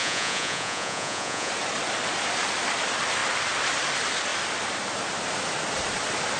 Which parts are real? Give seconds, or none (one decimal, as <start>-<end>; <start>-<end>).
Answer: 1.5-6.4